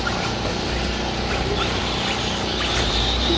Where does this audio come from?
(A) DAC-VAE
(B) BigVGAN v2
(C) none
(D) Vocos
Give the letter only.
C